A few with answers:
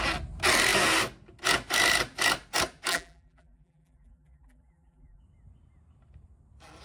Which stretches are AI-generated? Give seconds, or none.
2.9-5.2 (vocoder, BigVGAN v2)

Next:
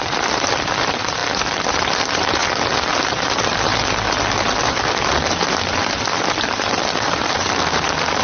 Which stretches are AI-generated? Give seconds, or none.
0.0-2.4 (vocoder, BigVGAN v2); 3.2-3.7; 4.6-8.2

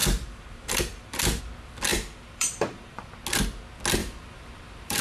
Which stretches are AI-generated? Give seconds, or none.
0.0-1.4 (vocoder, BigVGAN v2); 1.9-3.1; 4.0-5.0